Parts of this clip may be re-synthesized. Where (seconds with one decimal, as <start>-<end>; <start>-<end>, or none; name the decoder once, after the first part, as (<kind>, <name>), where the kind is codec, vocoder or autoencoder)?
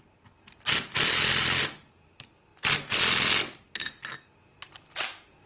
none